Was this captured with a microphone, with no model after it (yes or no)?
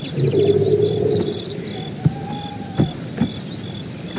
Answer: yes